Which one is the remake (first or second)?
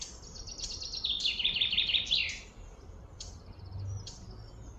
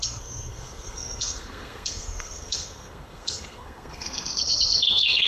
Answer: second